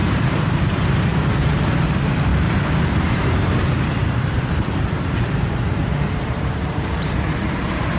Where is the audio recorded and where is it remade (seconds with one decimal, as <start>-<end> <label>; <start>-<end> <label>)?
0.0-1.6 remade; 1.6-2.3 recorded; 2.3-7.1 remade; 7.1-8.0 recorded